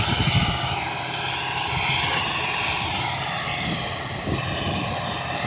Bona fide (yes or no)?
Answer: yes